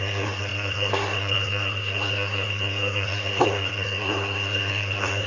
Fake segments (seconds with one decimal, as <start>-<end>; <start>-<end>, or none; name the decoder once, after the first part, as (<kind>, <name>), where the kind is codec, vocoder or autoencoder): 0.0-5.3 (codec, SNAC)